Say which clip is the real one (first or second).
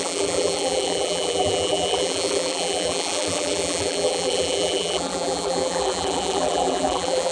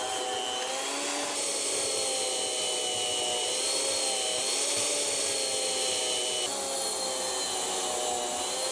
second